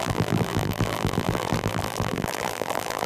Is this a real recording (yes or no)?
no